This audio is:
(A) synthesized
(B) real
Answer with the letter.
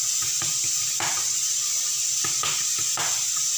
B